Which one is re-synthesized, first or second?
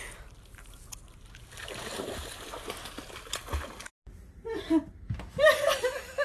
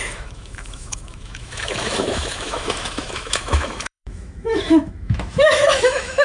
second